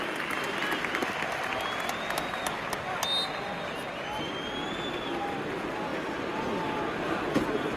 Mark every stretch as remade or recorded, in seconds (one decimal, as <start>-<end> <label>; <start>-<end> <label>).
0.0-7.8 recorded

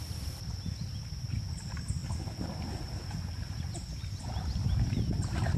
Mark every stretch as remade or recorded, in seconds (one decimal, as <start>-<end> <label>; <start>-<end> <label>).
0.0-5.6 recorded

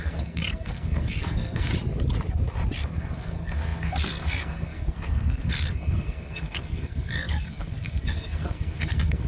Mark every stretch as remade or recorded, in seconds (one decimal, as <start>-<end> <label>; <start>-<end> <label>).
0.0-1.7 remade; 1.7-2.8 recorded; 2.8-9.3 remade

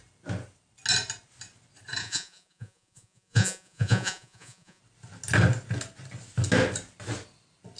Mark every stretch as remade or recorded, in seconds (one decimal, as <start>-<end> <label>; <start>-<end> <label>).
0.0-2.0 recorded; 2.0-4.8 remade; 4.8-7.8 recorded

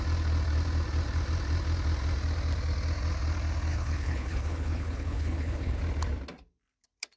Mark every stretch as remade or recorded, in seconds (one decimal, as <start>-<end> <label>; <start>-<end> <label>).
0.0-3.7 recorded; 3.7-5.8 remade; 5.8-7.2 recorded